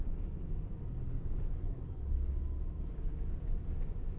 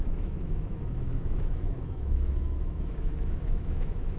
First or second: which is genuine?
first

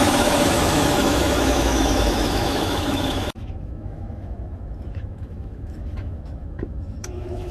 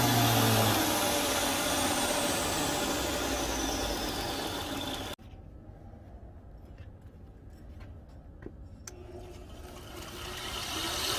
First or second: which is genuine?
second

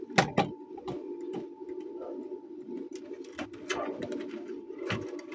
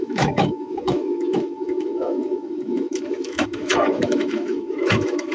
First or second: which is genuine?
first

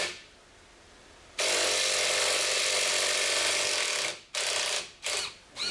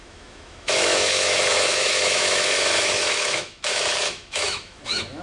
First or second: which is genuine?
first